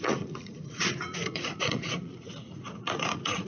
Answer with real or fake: fake